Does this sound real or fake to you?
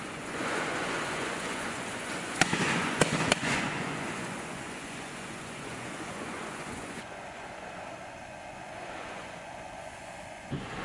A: fake